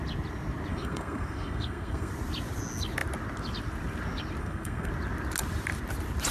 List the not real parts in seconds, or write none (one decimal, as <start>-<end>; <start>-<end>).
0.7-2.1; 4.4-4.9